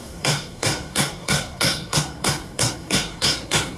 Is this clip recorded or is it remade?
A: remade